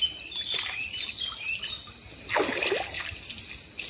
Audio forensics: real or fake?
real